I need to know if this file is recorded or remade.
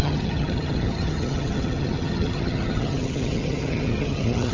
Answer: remade